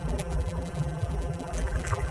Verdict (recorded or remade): remade